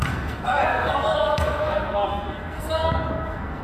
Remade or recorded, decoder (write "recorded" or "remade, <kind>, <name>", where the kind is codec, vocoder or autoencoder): remade, codec, SNAC